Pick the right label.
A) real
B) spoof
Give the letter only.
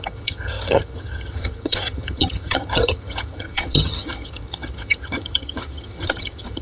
B